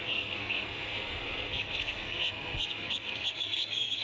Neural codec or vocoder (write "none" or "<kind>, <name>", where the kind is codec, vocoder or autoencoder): codec, SNAC